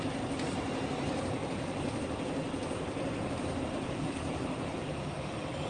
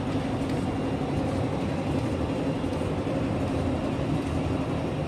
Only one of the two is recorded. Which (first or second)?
second